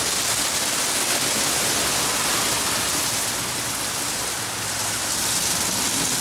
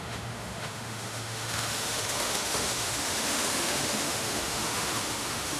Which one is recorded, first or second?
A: first